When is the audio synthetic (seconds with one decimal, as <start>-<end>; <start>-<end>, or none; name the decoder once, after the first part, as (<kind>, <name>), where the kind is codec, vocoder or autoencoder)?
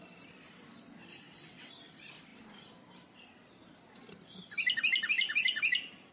1.1-1.7 (vocoder, WaveNeXt)